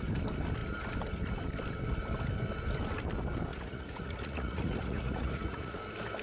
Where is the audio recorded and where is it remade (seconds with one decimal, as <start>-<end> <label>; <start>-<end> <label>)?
0.0-3.5 recorded; 3.5-5.8 remade; 5.8-6.2 recorded